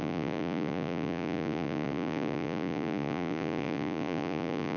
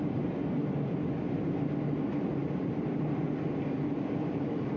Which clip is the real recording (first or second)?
second